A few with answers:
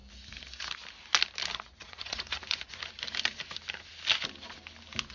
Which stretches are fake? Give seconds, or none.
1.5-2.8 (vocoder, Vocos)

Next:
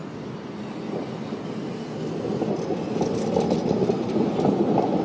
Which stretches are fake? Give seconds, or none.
none

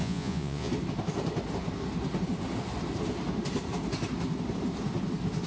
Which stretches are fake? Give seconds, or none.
0.0-0.7 (vocoder, Vocos)